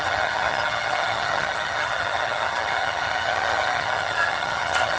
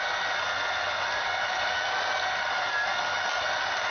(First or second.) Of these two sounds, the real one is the second